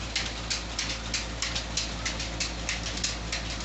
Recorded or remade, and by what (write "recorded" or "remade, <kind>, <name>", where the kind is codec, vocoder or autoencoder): recorded